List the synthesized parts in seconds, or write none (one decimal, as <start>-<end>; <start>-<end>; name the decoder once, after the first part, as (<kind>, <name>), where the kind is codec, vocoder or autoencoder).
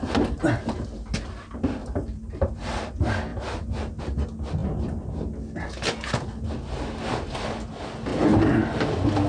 1.8-2.8 (vocoder, BigVGAN v2); 3.3-4.0